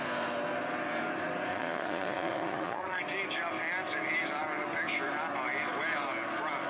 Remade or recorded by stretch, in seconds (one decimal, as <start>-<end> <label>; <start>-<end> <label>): 0.0-1.5 recorded; 1.5-3.0 remade; 3.0-6.7 recorded